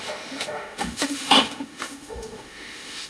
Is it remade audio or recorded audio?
remade